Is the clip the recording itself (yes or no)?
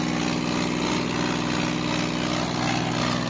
yes